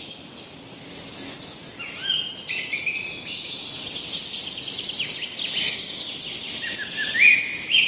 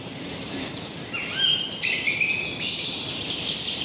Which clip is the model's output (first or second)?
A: second